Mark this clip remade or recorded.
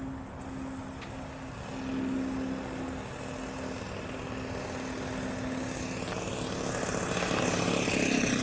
recorded